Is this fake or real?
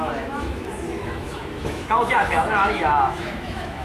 fake